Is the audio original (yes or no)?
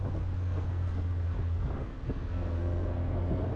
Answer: no